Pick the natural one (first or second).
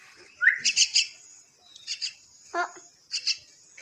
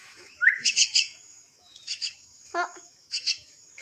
first